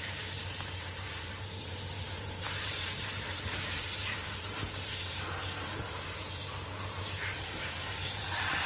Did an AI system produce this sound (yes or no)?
yes